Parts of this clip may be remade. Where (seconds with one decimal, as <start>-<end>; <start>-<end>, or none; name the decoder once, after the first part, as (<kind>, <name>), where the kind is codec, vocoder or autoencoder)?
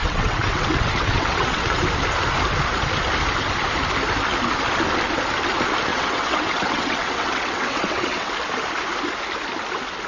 0.0-1.8 (vocoder, WaveNeXt); 5.9-8.3